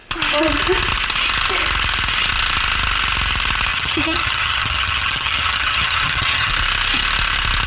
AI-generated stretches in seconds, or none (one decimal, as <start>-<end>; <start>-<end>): 3.7-6.5